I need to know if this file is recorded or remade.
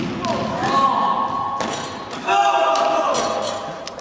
recorded